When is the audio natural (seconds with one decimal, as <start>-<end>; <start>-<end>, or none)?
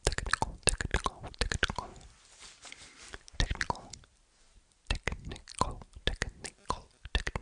0.0-7.4